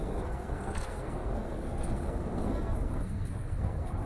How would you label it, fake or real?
fake